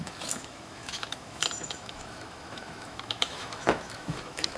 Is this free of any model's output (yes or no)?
no